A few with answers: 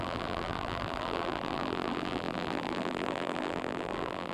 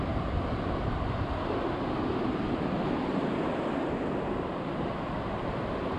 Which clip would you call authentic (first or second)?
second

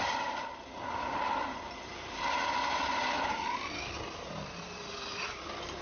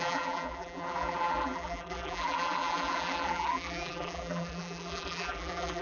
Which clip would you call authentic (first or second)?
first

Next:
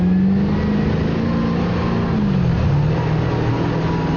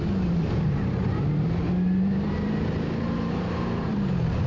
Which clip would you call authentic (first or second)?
first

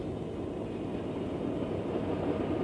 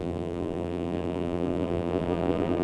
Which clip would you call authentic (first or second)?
first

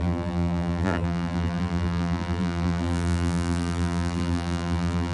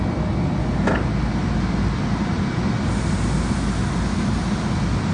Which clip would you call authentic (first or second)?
second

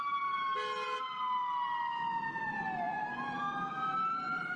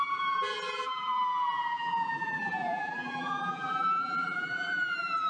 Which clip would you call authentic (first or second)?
first